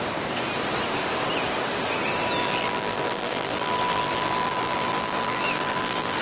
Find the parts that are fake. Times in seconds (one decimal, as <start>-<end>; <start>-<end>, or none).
2.4-6.2

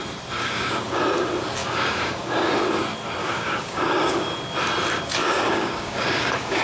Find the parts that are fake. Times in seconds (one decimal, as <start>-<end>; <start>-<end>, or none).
0.4-1.0; 1.6-2.5; 3.2-4.2; 5.2-6.6

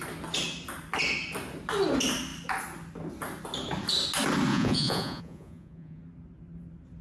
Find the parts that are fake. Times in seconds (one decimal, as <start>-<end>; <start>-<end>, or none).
4.5-6.0

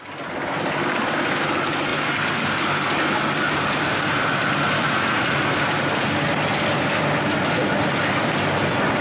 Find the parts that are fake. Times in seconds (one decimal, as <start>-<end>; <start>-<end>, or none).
4.8-5.4